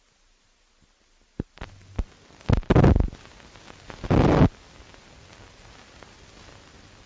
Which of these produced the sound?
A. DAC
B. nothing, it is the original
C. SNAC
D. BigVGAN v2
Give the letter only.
B